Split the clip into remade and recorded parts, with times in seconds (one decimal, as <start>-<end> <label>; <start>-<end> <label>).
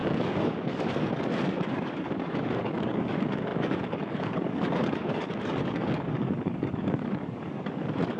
0.0-8.2 remade